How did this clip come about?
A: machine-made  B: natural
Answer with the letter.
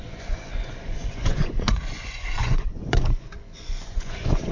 A